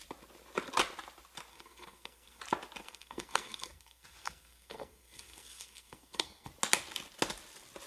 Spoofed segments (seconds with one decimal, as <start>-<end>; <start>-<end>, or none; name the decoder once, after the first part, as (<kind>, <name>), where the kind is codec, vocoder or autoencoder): 1.5-2.4 (codec, SNAC); 2.8-6.5